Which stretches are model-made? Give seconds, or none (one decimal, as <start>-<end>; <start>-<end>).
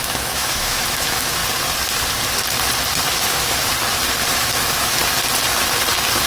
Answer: 0.0-1.4; 3.1-3.7; 4.3-5.0